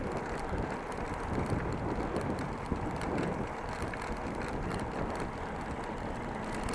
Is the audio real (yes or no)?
yes